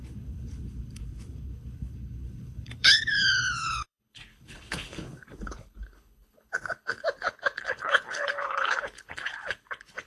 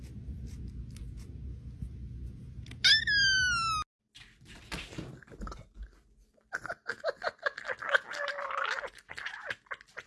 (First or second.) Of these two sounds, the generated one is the first